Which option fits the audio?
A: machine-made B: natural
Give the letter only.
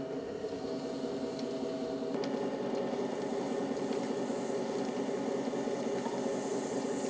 B